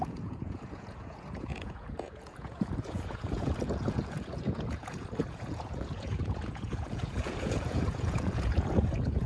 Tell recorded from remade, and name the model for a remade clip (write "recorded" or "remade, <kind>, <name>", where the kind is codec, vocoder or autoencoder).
remade, vocoder, Vocos